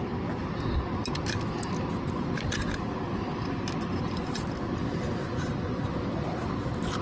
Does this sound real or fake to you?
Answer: real